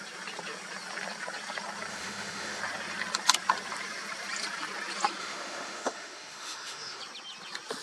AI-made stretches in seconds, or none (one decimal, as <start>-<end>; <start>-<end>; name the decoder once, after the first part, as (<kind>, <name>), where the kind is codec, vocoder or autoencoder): 1.9-2.6 (autoencoder, DAC-VAE); 5.2-7.0